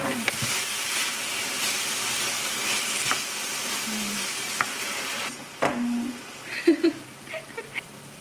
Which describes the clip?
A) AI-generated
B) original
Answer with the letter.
B